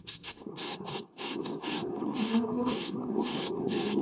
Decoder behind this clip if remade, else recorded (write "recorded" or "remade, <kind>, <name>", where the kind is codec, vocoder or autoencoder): remade, codec, SNAC